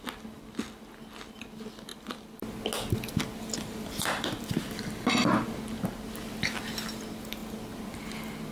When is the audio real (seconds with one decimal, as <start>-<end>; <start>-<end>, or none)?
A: 0.0-3.5; 5.3-8.5